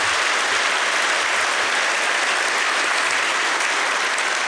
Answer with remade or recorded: recorded